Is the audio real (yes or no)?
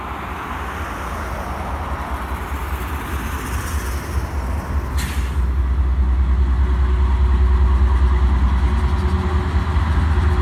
yes